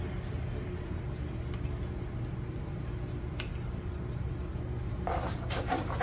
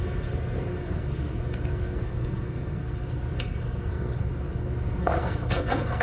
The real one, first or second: first